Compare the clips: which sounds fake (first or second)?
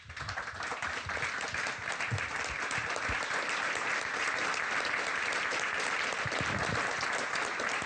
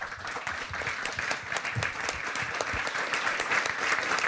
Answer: second